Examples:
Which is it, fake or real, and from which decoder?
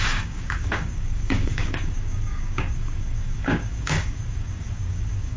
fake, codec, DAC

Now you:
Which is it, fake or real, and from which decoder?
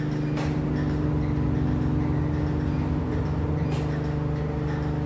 real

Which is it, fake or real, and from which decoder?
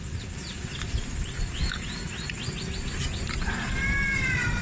real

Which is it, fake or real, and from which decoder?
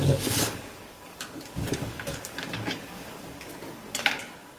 fake, codec, DAC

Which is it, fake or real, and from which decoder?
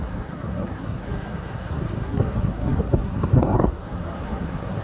fake, codec, SNAC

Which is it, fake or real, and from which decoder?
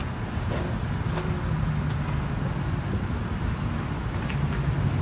real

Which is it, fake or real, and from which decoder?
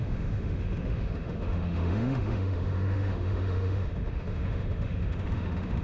fake, autoencoder, DAC-VAE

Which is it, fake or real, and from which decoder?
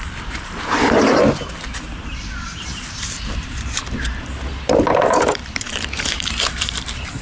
fake, vocoder, BigVGAN v2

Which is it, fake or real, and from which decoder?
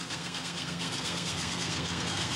fake, codec, SNAC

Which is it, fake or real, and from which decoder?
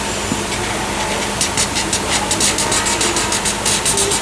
real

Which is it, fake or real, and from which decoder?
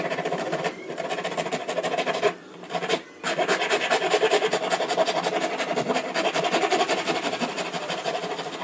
fake, vocoder, BigVGAN v2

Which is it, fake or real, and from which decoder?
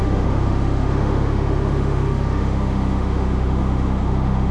fake, autoencoder, DAC-VAE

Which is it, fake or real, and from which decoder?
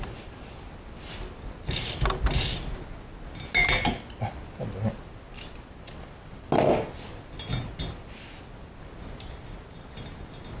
real